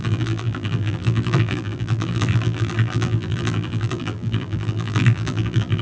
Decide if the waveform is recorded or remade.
remade